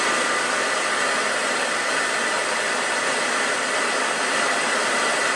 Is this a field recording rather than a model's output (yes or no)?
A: yes